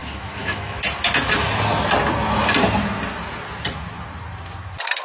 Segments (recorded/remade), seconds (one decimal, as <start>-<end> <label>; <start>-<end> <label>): 0.0-0.8 remade; 0.8-5.0 recorded